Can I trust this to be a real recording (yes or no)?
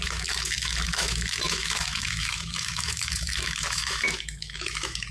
no